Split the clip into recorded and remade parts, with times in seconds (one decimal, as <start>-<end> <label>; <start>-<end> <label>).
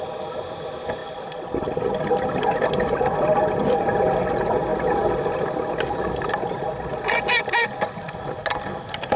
0.0-9.2 recorded